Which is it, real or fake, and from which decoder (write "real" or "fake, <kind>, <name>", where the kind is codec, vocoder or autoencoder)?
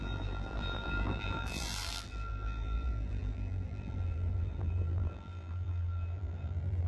fake, vocoder, BigVGAN v2